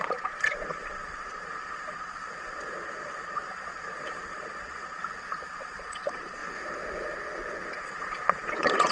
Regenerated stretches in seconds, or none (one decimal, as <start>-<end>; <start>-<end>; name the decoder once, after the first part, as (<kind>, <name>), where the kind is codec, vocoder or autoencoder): 0.0-5.0 (vocoder, Vocos); 5.5-6.4; 7.7-8.9